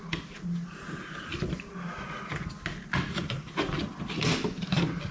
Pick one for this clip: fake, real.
real